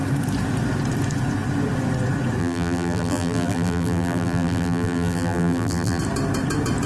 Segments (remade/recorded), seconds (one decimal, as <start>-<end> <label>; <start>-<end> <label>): 0.0-2.4 recorded; 2.4-6.0 remade; 6.0-6.9 recorded